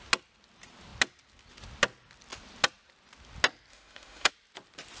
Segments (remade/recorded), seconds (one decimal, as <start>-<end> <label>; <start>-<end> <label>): 0.0-3.7 recorded; 3.7-4.3 remade; 4.3-5.0 recorded